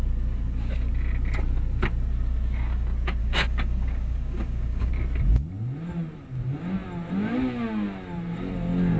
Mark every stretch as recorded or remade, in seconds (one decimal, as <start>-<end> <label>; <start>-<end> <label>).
0.0-3.2 recorded; 3.2-4.9 remade; 4.9-9.0 recorded